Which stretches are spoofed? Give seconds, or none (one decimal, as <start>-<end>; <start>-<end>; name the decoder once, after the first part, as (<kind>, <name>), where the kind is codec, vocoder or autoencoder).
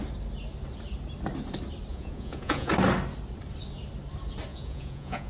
1.9-2.7 (vocoder, Vocos); 4.5-5.3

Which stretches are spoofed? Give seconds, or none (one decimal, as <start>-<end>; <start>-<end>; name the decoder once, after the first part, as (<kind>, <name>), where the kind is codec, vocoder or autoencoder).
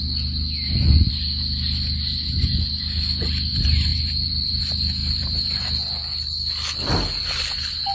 3.9-4.6 (vocoder, BigVGAN v2); 5.0-5.7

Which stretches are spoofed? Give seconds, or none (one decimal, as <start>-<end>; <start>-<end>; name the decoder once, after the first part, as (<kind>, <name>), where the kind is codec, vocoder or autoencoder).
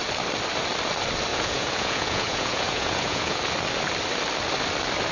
1.3-3.4 (vocoder, Vocos)